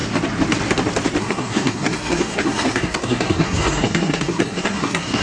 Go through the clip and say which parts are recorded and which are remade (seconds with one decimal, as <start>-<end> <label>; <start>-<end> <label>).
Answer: 0.0-1.2 recorded; 1.2-5.2 remade